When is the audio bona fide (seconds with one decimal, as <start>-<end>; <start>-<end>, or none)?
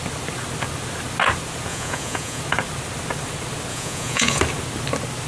0.0-1.7; 2.4-3.7; 4.4-5.3